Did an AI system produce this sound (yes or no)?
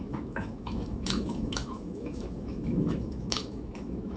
yes